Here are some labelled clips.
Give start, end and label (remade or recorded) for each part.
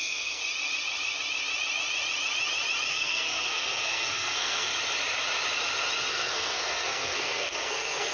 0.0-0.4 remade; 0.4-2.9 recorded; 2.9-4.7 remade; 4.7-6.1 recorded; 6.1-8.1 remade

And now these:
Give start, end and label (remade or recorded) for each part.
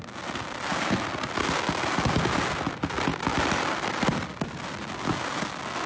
0.0-5.9 recorded